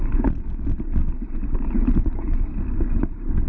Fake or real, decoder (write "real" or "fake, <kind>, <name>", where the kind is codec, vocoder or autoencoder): real